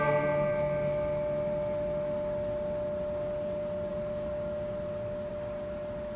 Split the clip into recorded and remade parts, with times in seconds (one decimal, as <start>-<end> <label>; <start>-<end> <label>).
0.0-6.2 recorded